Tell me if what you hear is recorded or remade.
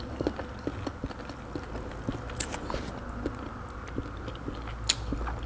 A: recorded